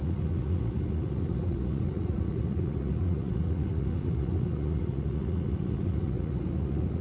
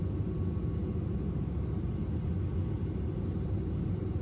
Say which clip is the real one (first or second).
second